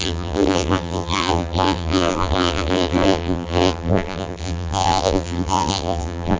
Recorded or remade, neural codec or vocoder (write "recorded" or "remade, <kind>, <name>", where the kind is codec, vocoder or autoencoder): remade, vocoder, BigVGAN v2